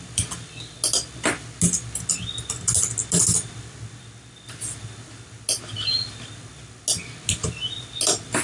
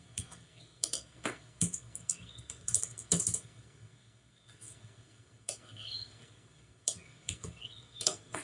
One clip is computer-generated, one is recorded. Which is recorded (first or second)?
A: first